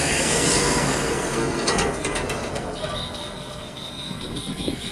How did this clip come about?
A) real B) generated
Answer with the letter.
B